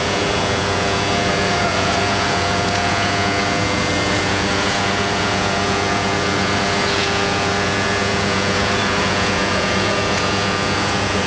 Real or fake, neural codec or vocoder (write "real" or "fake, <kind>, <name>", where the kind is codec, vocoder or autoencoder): fake, vocoder, Vocos